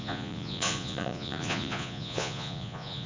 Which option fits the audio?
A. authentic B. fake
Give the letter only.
B